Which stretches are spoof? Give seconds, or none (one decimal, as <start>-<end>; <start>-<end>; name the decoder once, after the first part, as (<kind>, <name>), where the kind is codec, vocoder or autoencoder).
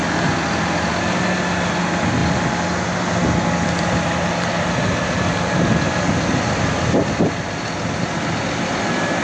none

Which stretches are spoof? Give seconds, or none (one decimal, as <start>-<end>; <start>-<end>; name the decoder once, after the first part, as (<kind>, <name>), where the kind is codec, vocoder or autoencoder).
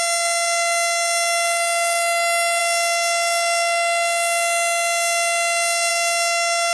0.0-2.6 (autoencoder, DAC-VAE); 5.9-6.7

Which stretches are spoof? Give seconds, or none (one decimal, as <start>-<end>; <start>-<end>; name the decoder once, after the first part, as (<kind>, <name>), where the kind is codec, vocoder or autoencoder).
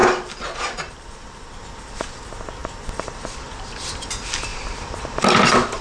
0.0-1.6 (vocoder, BigVGAN v2); 2.6-4.1; 4.5-5.8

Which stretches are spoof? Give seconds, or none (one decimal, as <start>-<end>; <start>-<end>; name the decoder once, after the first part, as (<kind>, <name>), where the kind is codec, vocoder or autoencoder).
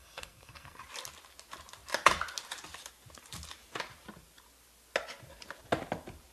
0.0-0.8 (codec, SNAC)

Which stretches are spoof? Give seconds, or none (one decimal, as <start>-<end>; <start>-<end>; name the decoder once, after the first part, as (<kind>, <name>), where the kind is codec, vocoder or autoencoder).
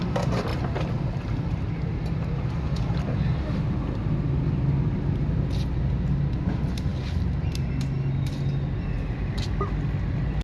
none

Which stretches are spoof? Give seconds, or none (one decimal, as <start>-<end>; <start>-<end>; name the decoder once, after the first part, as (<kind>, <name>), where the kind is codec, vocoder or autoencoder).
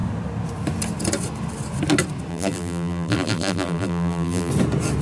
2.3-4.5 (vocoder, BigVGAN v2)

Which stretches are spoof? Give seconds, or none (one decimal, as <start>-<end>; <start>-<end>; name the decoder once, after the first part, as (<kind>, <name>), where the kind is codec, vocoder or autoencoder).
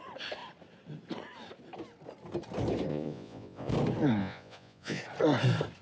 2.9-3.7 (vocoder, Vocos); 4.2-5.0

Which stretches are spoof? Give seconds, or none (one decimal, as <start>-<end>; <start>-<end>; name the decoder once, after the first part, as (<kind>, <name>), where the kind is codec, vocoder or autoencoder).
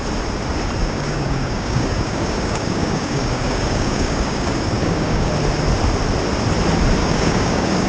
0.8-5.3 (codec, DAC); 7.0-7.9